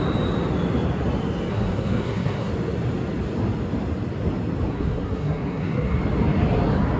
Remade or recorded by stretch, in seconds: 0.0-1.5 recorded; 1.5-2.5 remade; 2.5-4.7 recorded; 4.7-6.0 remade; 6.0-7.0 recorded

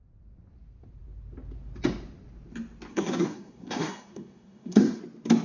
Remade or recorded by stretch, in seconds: 0.0-2.9 recorded; 2.9-5.0 remade; 5.0-5.4 recorded

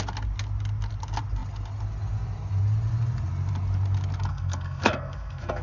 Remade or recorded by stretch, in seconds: 0.0-4.3 recorded; 4.3-5.6 remade

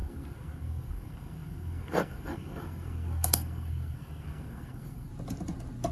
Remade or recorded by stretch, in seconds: 0.0-5.1 remade; 5.1-5.9 recorded

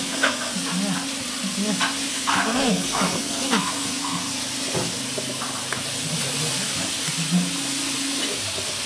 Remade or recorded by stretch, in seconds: 0.0-0.5 remade; 0.5-2.1 recorded; 2.1-4.3 remade; 4.3-8.9 recorded

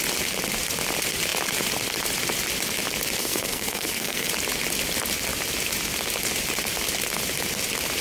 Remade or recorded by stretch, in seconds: 0.0-3.2 recorded; 3.2-4.3 remade; 4.3-8.0 recorded

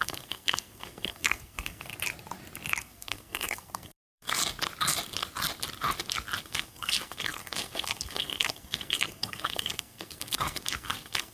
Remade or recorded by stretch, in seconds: 0.0-1.9 remade; 1.9-2.8 recorded; 2.8-4.4 remade; 4.4-6.4 recorded; 6.4-11.3 remade